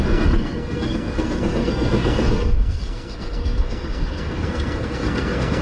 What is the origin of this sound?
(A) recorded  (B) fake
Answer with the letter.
B